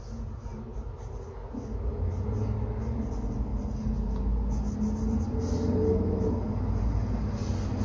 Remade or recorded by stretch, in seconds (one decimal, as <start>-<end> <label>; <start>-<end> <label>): 0.0-7.8 recorded